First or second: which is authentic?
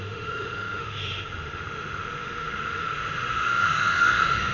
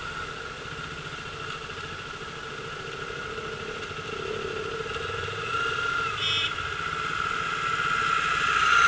second